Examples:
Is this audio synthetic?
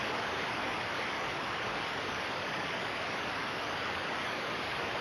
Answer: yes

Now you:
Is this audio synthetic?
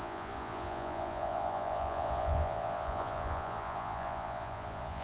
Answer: yes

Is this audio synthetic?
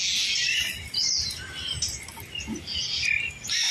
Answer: no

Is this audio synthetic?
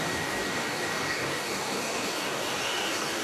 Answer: yes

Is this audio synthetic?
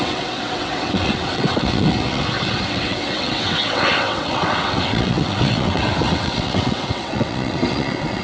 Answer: yes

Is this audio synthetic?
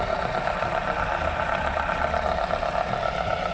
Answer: no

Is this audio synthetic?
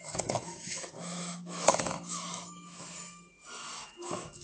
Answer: yes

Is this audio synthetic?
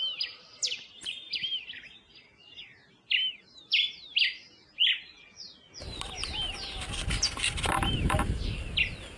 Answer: no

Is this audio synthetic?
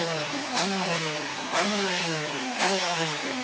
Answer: yes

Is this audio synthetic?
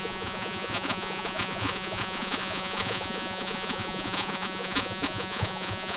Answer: yes